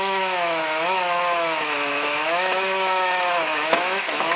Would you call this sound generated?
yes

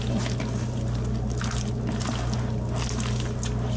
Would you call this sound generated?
no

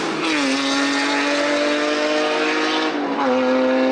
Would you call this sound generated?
no